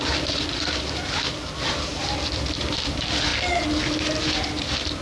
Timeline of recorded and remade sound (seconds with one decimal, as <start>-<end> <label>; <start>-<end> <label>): 0.0-5.0 recorded

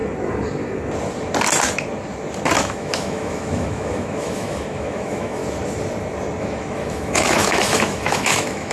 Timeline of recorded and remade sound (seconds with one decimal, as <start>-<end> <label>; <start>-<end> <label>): 0.0-2.6 recorded; 2.6-5.4 remade; 5.4-6.4 recorded; 6.4-8.7 remade

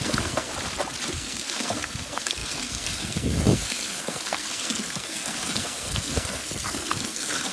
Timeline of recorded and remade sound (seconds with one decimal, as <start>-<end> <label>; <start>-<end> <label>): 0.0-0.5 remade; 0.5-1.1 recorded; 1.1-7.5 remade

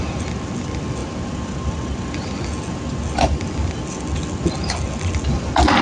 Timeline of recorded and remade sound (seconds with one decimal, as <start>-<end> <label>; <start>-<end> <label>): 0.0-5.8 recorded

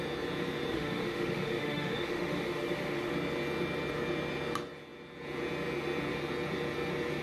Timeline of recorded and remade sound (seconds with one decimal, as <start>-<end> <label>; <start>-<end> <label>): 0.0-0.7 recorded; 0.7-3.1 remade; 3.1-7.2 recorded

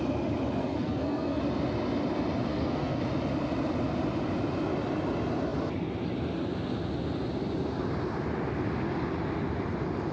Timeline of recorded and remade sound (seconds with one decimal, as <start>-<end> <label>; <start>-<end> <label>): 0.0-0.6 recorded; 0.6-1.4 remade; 1.4-2.5 recorded; 2.5-3.0 remade; 3.0-10.1 recorded

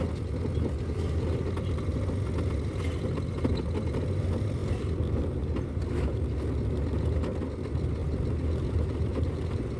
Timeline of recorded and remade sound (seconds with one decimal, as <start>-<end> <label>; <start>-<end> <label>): 0.0-4.6 recorded; 4.6-5.8 remade; 5.8-8.0 recorded; 8.0-9.4 remade; 9.4-9.8 recorded

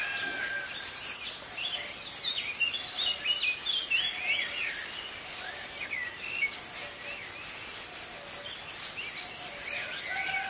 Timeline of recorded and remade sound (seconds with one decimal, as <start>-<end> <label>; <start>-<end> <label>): 0.0-10.5 recorded